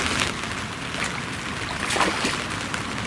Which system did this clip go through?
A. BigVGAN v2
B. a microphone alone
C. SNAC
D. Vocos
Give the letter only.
B